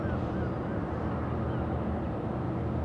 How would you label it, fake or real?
real